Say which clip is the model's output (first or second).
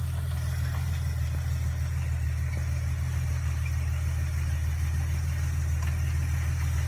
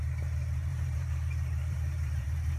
second